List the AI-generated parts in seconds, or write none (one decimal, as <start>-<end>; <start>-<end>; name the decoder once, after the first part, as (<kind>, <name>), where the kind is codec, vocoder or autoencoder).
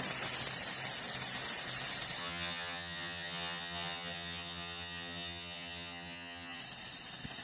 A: 2.2-6.6 (vocoder, HiFi-GAN)